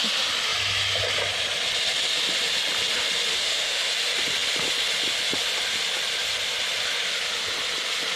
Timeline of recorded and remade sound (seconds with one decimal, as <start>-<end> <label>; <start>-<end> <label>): 0.0-3.3 recorded; 3.3-3.9 remade; 3.9-8.2 recorded